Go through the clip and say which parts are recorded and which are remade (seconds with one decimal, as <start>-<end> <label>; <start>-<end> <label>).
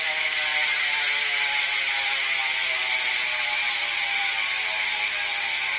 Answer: 0.0-5.8 remade